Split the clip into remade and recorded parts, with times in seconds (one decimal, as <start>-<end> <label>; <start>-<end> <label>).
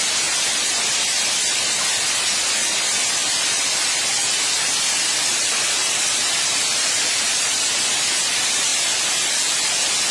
0.0-3.2 recorded; 3.2-4.5 remade; 4.5-5.3 recorded; 5.3-7.7 remade; 7.7-8.7 recorded; 8.7-9.7 remade; 9.7-10.1 recorded